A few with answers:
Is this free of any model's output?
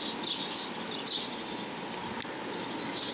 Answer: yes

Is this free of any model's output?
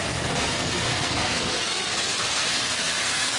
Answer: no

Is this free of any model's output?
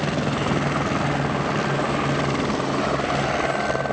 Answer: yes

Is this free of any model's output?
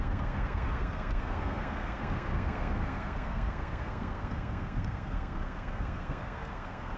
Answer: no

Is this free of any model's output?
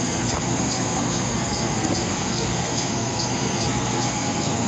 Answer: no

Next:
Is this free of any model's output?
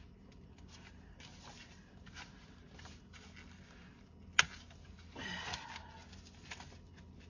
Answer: yes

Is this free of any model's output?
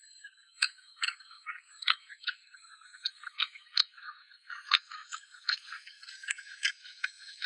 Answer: no